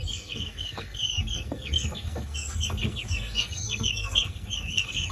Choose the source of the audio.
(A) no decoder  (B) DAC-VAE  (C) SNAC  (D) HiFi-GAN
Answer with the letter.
C